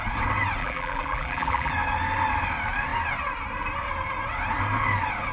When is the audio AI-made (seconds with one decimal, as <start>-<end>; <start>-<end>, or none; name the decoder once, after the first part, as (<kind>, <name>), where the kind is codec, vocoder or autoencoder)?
0.6-1.7 (vocoder, BigVGAN v2)